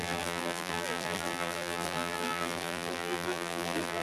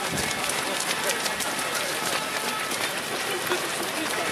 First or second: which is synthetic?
first